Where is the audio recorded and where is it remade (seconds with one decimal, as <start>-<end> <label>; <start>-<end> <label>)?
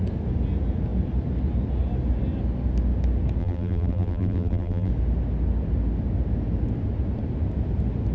0.0-3.4 recorded; 3.4-4.9 remade; 4.9-8.1 recorded